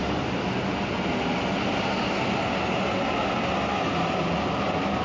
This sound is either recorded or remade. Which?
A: recorded